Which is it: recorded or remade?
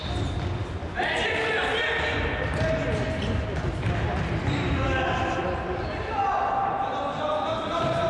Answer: recorded